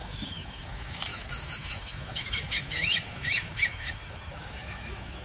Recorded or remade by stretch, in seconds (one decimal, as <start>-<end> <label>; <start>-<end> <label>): 0.0-5.2 remade